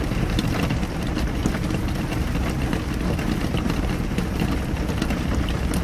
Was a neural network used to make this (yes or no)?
no